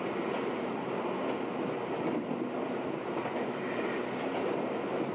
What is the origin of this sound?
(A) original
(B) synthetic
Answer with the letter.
A